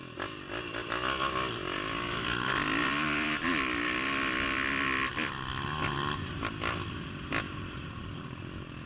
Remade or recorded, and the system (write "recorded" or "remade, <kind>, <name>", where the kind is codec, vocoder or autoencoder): recorded